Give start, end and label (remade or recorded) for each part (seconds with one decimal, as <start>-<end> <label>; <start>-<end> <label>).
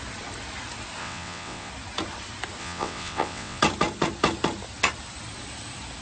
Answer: 0.0-1.0 recorded; 1.0-1.7 remade; 1.7-2.6 recorded; 2.6-3.6 remade; 3.6-6.0 recorded